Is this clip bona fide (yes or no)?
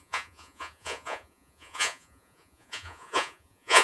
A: no